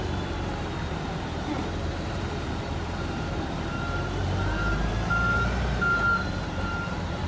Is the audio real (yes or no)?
no